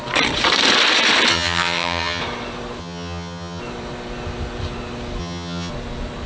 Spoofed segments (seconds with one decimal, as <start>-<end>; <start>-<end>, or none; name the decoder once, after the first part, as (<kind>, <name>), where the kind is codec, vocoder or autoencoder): 1.3-2.2 (vocoder, HiFi-GAN); 2.8-3.6; 5.2-5.7